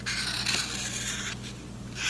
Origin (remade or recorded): recorded